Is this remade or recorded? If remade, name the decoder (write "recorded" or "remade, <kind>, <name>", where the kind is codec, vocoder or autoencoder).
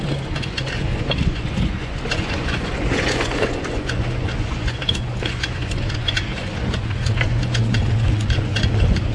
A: remade, vocoder, Vocos